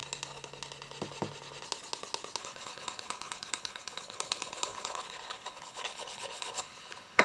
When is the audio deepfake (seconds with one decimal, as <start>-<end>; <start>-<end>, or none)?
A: 2.4-7.2